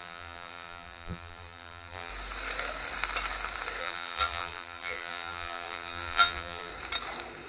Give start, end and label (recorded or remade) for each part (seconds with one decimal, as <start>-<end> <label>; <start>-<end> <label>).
0.0-2.1 remade; 2.1-3.8 recorded; 3.8-6.7 remade; 6.7-7.5 recorded